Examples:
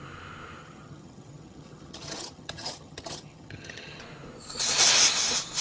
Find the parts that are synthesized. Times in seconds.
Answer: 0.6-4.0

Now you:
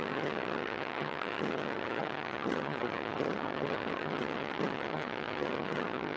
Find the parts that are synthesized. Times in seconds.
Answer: 0.0-6.2

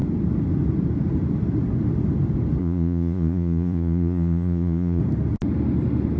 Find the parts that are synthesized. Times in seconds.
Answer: 2.6-5.0

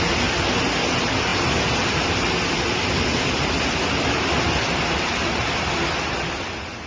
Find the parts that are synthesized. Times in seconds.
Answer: 1.3-4.2

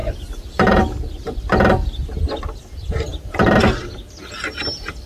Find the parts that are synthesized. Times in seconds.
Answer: 0.0-0.8; 3.1-4.3

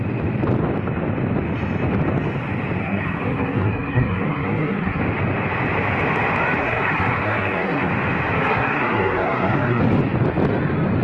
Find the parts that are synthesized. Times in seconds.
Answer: 2.8-5.0; 6.6-7.9; 8.5-9.8

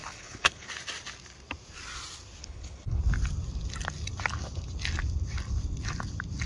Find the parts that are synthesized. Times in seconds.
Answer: 0.0-0.7; 2.4-3.0

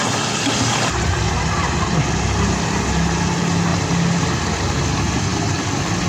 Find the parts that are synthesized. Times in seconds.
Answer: none